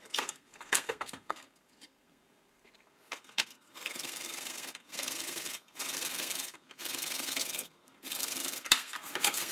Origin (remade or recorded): remade